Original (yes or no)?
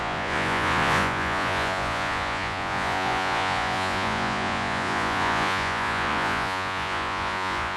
no